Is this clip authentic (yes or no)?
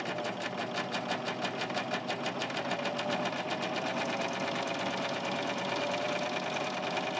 yes